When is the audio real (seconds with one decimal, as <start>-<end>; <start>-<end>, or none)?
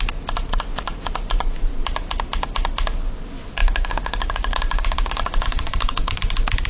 0.0-3.6; 6.2-6.7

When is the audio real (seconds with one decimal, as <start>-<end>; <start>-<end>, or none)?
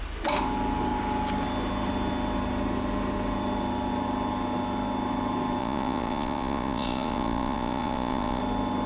0.0-5.6; 8.4-8.9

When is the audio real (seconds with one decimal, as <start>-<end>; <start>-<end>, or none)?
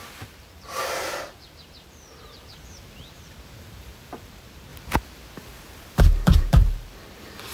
4.7-6.0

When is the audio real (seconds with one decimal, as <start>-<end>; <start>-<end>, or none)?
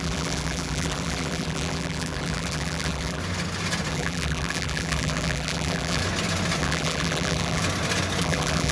3.2-3.9; 6.0-6.6; 7.6-8.2